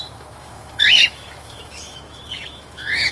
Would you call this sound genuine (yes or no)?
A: no